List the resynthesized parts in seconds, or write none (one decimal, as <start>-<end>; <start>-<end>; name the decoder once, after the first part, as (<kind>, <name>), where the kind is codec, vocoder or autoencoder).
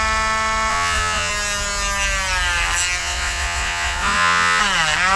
0.7-1.3 (vocoder, Vocos); 3.0-4.6